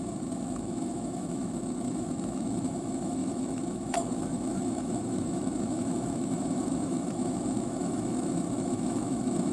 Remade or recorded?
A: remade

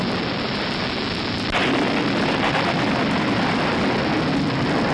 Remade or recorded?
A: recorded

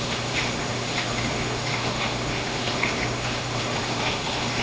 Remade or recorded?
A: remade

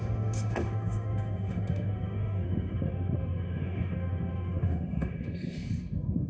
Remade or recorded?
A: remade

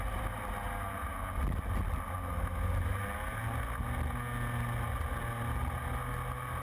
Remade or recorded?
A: recorded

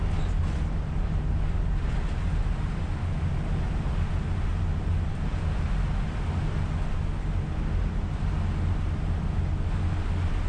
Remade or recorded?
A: recorded